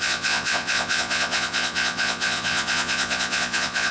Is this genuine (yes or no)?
no